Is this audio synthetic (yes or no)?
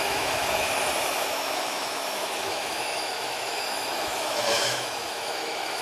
yes